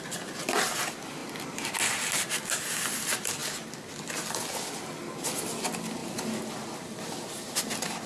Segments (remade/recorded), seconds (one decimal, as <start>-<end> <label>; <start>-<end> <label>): 0.0-8.1 recorded